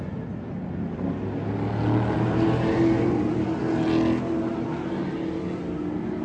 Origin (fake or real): real